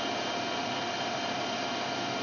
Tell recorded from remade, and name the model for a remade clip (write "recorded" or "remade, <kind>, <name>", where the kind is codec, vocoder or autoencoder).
recorded